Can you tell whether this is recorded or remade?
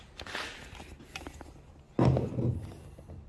recorded